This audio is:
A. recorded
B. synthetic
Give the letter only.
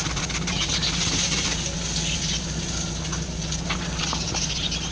A